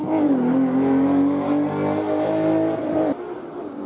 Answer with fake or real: real